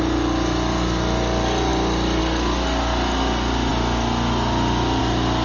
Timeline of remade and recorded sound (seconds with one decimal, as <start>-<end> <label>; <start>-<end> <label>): 0.0-5.4 recorded